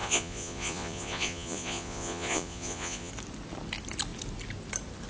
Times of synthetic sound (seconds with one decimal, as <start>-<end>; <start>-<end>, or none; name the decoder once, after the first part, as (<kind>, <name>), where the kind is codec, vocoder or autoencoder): 0.0-3.1 (vocoder, Vocos)